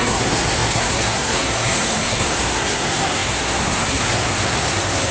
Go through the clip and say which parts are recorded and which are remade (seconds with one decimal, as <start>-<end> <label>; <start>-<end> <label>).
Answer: 0.0-5.1 remade